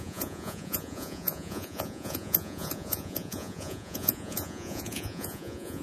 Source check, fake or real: fake